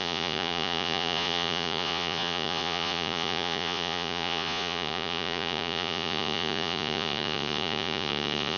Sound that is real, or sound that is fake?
fake